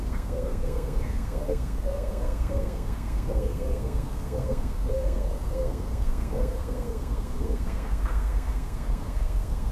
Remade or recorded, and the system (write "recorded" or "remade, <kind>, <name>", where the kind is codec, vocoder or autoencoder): remade, codec, SNAC